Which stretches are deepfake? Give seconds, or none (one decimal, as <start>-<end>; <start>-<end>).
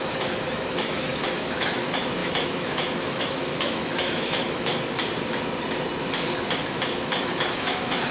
0.0-4.7; 6.6-8.1